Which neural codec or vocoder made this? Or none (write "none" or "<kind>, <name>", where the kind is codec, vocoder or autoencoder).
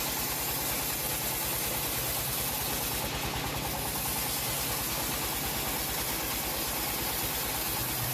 none